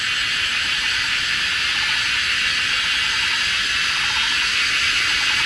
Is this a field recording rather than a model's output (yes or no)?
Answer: yes